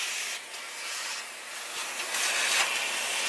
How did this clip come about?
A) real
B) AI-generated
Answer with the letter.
A